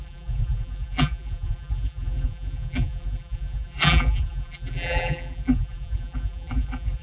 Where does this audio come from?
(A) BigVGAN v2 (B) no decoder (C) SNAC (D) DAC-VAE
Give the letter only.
A